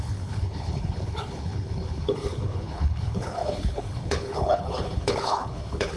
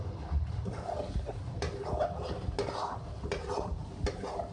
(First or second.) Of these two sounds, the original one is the second